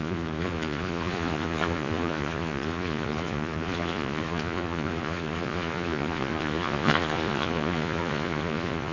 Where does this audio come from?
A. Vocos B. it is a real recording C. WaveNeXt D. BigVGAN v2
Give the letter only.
A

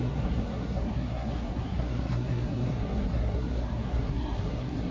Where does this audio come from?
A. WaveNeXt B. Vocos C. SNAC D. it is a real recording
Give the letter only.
C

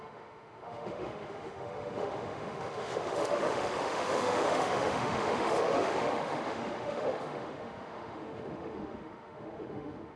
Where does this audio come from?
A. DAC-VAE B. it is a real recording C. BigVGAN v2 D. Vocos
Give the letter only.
A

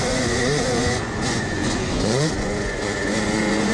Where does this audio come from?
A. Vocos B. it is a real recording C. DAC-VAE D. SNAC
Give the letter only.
A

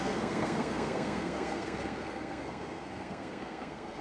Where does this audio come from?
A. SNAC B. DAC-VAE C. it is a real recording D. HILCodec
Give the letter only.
A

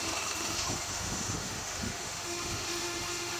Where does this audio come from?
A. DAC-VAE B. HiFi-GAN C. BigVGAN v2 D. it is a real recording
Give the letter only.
A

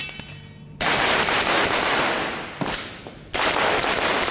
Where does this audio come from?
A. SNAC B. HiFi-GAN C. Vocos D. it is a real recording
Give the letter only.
D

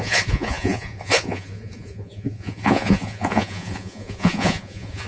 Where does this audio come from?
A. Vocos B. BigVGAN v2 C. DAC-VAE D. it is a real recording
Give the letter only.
A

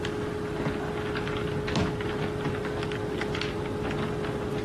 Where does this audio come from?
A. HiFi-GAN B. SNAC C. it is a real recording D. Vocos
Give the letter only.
C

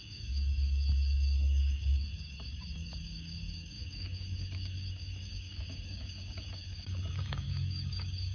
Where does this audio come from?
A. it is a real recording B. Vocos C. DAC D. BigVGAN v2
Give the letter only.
C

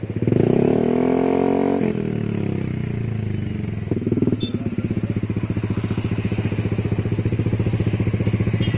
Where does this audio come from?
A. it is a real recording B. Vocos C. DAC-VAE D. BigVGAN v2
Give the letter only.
A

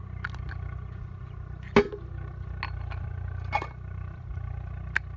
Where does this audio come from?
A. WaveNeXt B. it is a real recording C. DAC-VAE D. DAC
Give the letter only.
B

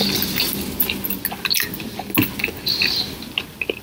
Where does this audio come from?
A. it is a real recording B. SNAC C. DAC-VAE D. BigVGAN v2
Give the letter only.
A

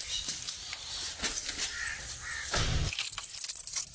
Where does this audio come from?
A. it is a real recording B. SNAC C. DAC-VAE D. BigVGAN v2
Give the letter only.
A